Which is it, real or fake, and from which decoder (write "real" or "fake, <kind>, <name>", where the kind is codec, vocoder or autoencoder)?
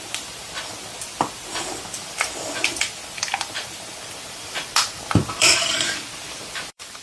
fake, vocoder, BigVGAN v2